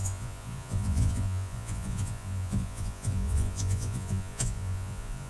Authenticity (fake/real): fake